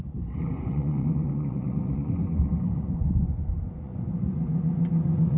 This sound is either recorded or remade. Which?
remade